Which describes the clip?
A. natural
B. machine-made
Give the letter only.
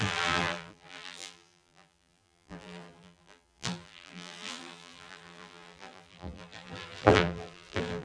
B